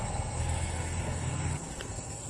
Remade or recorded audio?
remade